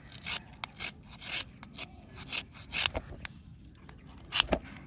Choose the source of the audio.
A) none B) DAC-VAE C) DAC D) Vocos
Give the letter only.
A